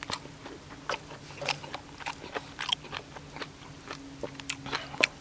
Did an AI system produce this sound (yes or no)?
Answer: no